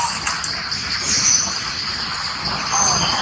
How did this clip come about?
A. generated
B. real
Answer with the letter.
B